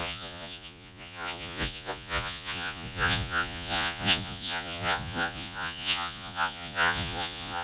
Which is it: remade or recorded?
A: remade